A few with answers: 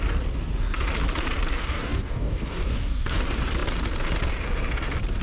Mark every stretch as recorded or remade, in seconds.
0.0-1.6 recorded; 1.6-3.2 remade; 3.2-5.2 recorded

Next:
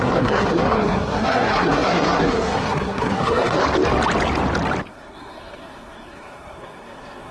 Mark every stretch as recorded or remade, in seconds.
0.0-3.6 remade; 3.6-4.9 recorded; 4.9-7.3 remade

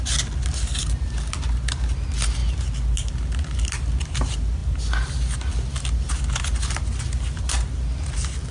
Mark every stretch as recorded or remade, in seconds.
0.0-8.5 recorded